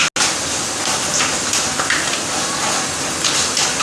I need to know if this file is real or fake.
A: real